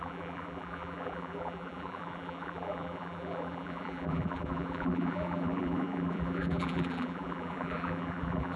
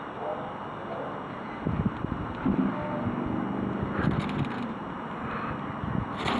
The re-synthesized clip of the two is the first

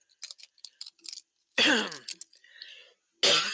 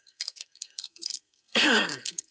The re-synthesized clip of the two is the second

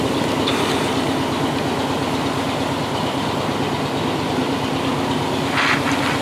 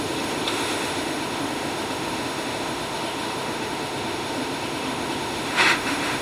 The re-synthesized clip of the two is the second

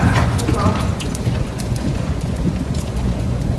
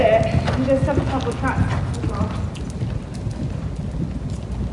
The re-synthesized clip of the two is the first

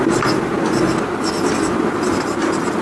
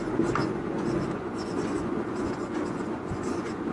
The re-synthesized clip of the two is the second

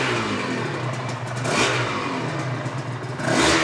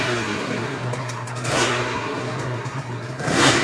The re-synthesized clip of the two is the second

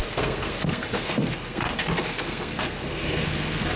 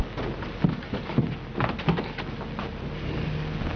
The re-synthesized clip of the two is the first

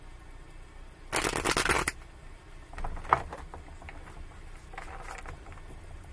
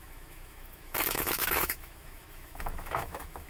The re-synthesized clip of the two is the second